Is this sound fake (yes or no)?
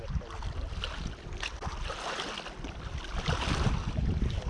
no